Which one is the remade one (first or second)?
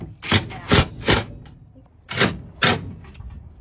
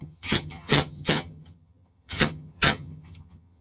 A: second